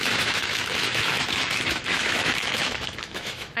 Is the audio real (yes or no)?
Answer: no